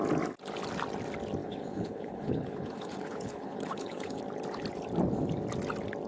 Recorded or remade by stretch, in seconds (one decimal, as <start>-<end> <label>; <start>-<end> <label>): 0.0-1.4 recorded; 1.4-4.2 remade; 4.2-6.1 recorded

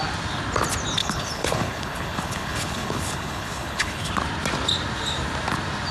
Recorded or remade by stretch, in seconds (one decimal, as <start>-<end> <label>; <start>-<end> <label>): 0.0-1.0 recorded; 1.0-4.1 remade; 4.1-5.9 recorded

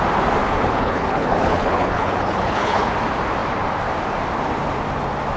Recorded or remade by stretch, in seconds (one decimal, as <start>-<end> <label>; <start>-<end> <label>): 0.0-0.4 recorded; 0.4-2.9 remade; 2.9-5.4 recorded